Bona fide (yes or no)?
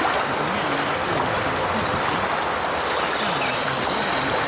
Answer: yes